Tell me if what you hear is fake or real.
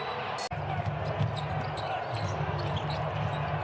real